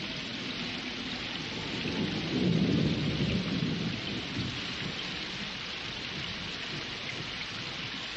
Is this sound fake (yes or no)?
no